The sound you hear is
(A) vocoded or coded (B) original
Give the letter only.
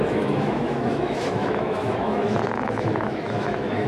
A